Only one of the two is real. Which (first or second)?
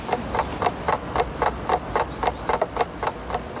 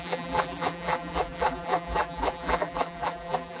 first